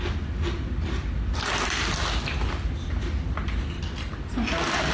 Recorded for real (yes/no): yes